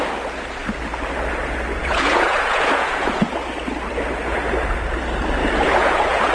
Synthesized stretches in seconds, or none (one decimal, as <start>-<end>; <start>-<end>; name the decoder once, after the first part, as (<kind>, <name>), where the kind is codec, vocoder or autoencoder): 1.8-3.3 (vocoder, Vocos); 5.4-6.3